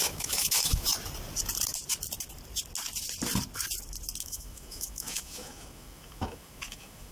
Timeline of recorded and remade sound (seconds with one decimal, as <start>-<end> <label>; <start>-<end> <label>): 0.0-0.9 remade; 0.9-4.2 recorded; 4.2-7.1 remade